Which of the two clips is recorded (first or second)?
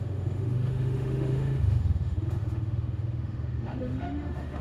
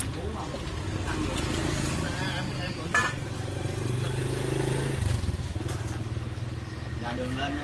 second